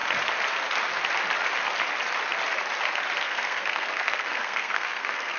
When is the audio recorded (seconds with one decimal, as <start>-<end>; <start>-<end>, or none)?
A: 0.0-3.2